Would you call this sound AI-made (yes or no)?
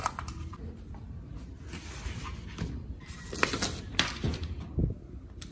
no